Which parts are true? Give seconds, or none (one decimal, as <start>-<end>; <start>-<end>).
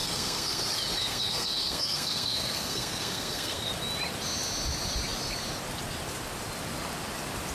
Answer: 0.6-1.0; 3.7-7.5